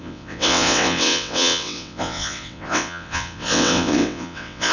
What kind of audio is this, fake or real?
fake